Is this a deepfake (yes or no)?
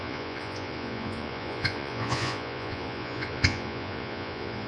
yes